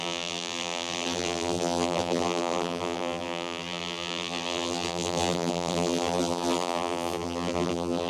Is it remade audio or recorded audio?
remade